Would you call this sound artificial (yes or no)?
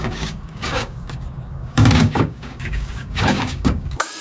yes